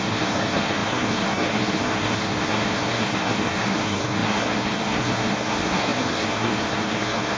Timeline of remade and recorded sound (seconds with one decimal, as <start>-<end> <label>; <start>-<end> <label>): 0.0-7.4 remade